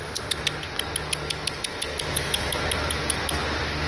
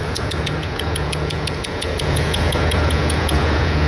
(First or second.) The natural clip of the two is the first